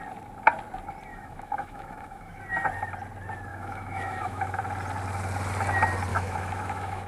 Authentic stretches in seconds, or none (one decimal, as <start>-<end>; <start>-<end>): 0.0-1.1; 2.4-3.5; 4.6-6.1